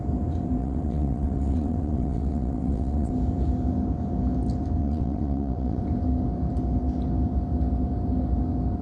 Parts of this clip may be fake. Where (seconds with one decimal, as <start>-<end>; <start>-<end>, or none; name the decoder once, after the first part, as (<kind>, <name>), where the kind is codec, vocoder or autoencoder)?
0.6-3.1 (vocoder, WaveNeXt); 4.8-5.8